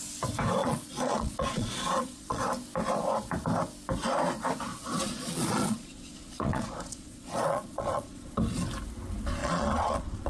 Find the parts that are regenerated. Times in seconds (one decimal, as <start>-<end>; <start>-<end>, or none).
0.6-2.4; 4.7-8.4; 9.4-10.3